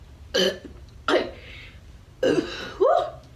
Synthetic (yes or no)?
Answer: no